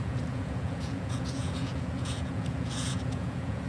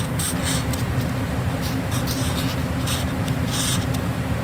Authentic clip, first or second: second